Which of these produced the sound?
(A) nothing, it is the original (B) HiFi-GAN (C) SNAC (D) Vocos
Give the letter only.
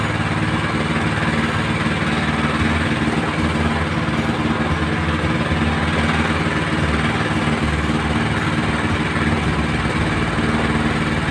A